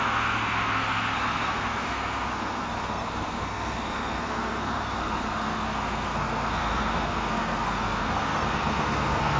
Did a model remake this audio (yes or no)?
yes